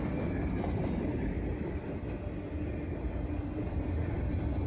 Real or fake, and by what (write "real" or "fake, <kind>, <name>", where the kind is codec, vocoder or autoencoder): real